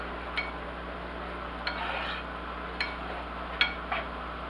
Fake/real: real